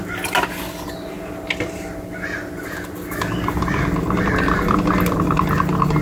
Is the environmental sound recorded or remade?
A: recorded